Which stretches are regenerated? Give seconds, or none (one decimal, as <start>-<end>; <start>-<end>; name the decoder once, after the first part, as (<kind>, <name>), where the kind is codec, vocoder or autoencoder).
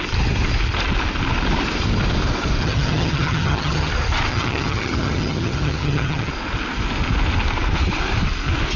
2.6-3.9 (vocoder, HiFi-GAN); 4.3-6.3